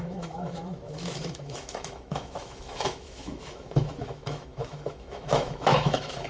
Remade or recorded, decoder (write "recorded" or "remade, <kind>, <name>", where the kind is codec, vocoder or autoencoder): remade, autoencoder, DAC-VAE